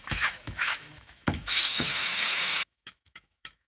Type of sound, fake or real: fake